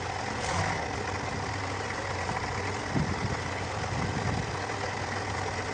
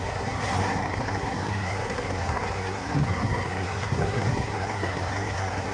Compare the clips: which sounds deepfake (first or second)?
second